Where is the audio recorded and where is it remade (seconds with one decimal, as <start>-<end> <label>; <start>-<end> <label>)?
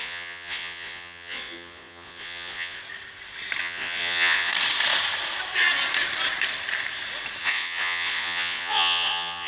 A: 0.0-2.8 remade; 2.8-3.6 recorded; 3.6-4.5 remade; 4.5-7.4 recorded; 7.4-9.5 remade